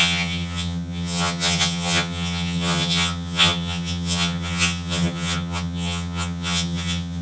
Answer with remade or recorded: remade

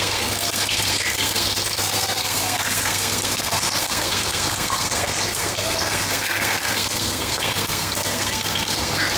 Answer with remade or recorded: remade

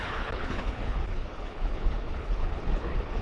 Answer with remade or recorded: remade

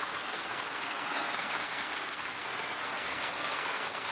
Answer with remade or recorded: remade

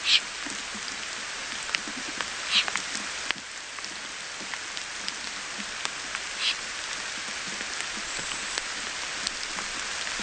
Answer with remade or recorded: recorded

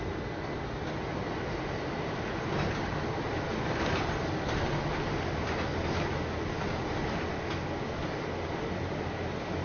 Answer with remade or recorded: recorded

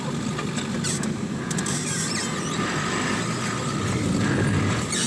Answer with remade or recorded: recorded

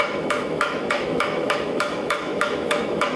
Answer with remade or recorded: remade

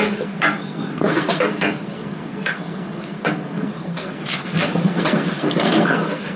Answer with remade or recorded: remade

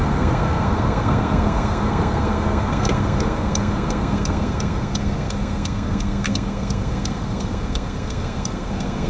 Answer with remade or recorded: remade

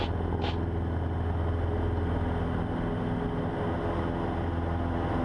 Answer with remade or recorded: recorded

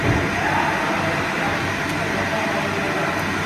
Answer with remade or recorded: recorded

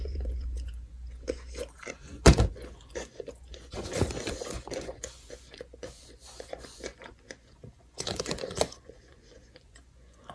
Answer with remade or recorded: remade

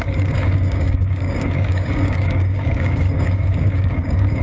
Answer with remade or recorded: remade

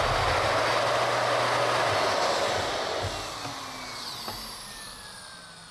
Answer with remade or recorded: recorded